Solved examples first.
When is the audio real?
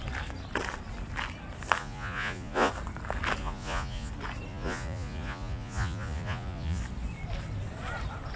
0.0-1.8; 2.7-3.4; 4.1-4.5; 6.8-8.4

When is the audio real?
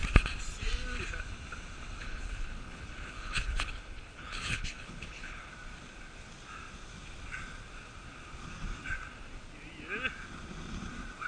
0.0-2.0; 5.5-11.3